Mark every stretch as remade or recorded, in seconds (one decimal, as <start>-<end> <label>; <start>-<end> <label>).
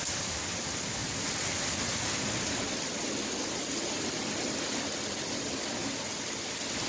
0.0-6.9 recorded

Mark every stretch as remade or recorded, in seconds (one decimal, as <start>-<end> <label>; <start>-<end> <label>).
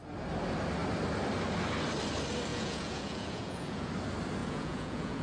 0.0-2.5 recorded; 2.5-3.9 remade; 3.9-4.4 recorded; 4.4-5.2 remade